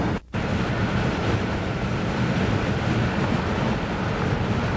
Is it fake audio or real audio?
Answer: real